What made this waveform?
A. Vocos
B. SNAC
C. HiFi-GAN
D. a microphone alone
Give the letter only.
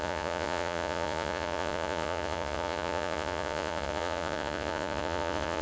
A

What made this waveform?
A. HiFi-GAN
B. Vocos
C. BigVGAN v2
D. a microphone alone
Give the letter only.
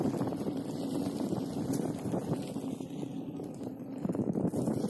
D